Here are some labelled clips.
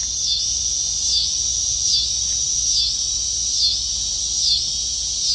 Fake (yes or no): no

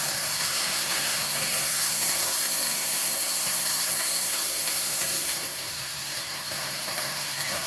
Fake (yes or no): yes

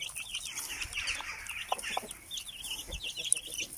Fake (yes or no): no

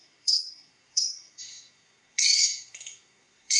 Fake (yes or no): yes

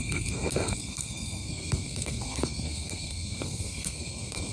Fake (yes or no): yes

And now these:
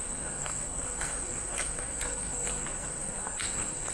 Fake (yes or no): yes